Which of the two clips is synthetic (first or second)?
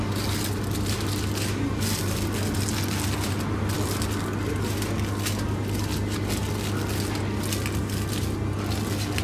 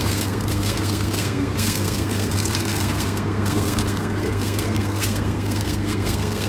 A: second